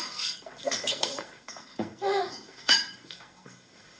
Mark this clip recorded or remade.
remade